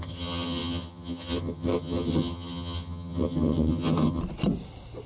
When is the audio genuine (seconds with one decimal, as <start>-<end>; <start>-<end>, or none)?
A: 4.2-5.1